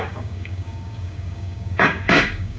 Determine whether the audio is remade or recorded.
remade